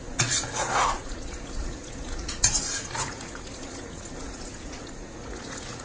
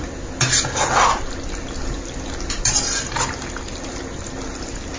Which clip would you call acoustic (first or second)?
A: second